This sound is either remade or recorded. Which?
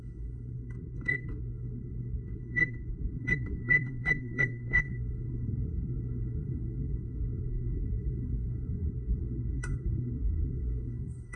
remade